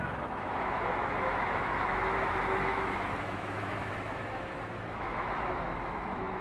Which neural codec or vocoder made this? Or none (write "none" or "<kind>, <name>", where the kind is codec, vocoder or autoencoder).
autoencoder, DAC-VAE